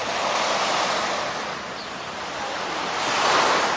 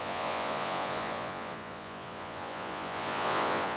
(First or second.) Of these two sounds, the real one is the first